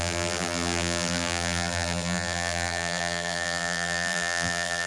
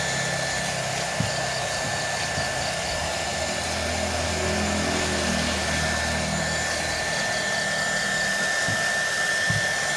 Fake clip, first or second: first